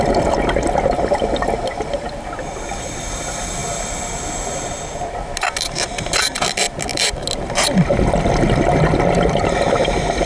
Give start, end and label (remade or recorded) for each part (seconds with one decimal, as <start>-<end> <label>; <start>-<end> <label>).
0.0-10.3 recorded